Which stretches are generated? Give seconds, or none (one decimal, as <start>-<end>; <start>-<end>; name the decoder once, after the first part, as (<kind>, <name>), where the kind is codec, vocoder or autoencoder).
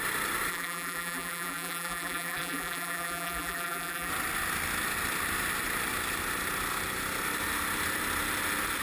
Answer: 0.5-4.1 (vocoder, BigVGAN v2)